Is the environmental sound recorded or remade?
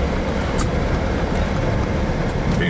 remade